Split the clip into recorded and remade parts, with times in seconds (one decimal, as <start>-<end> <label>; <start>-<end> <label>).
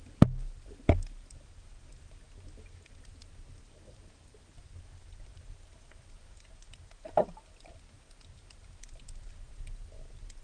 0.0-10.4 recorded